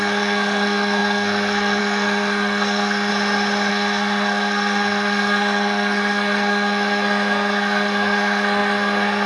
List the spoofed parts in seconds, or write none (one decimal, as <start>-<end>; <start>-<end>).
0.0-3.1; 3.7-9.3